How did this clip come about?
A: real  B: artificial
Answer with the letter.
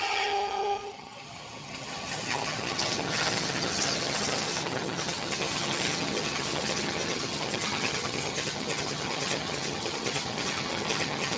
B